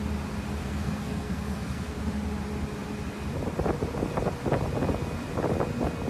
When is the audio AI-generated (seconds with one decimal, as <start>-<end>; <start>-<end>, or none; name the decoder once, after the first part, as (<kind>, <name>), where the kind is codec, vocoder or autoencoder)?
0.6-2.0 (codec, SNAC)